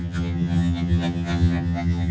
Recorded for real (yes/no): no